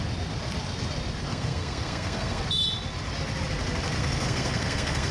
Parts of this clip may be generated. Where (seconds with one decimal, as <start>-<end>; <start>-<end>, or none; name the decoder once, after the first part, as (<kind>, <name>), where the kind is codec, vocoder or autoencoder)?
1.3-2.4 (codec, SNAC); 4.0-5.1